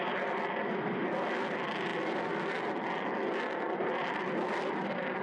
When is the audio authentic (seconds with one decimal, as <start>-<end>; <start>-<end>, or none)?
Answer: 0.0-5.2

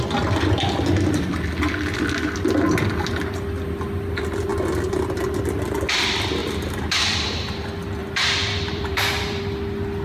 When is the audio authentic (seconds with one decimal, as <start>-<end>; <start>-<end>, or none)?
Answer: 0.0-6.4; 7.0-8.0; 9.4-10.0